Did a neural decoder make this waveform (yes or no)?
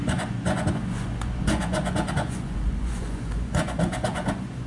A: yes